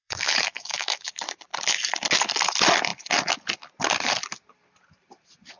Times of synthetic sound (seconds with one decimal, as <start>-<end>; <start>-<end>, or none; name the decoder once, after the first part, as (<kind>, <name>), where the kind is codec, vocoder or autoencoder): 0.0-1.1 (autoencoder, DAC-VAE)